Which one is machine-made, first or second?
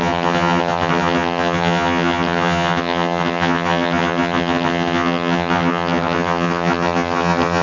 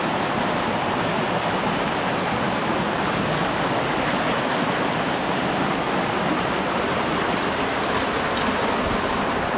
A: first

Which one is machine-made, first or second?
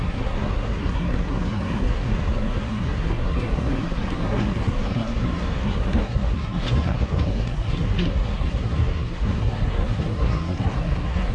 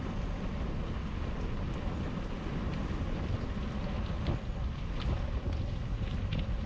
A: first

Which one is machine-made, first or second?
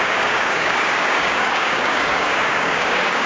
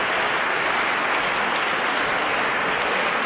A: first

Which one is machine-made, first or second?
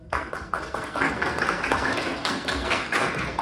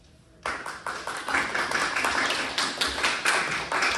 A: first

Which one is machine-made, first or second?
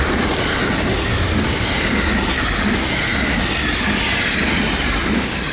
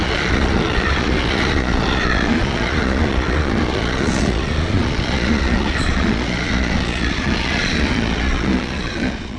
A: second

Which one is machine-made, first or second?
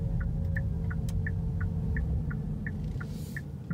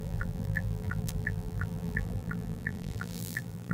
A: second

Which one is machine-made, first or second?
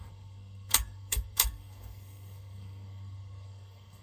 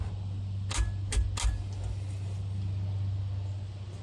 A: first